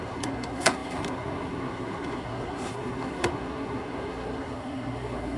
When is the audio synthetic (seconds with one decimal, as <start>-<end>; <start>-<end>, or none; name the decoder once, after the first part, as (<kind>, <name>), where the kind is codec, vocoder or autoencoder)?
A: 0.0-5.4 (codec, SNAC)